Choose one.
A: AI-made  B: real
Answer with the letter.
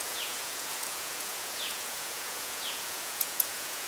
A